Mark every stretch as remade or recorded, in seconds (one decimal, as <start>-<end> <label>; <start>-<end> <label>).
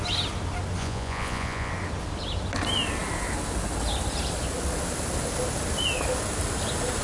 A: 0.0-0.8 recorded; 0.8-1.7 remade; 1.7-7.0 recorded